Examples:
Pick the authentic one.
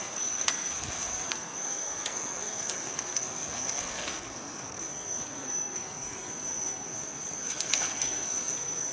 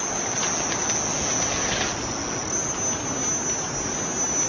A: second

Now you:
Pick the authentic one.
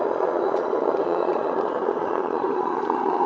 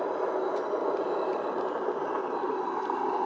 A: second